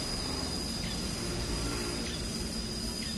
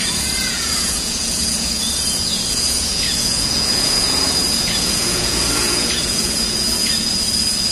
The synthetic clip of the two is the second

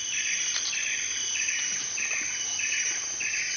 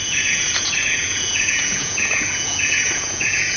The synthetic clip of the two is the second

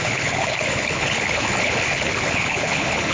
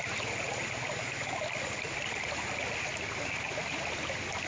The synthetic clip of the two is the first